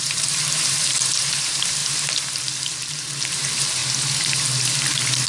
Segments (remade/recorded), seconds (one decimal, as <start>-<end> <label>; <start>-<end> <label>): 0.0-1.8 remade; 1.8-2.9 recorded; 2.9-3.8 remade; 3.8-4.8 recorded; 4.8-5.3 remade